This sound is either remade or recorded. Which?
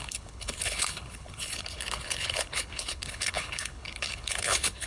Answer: remade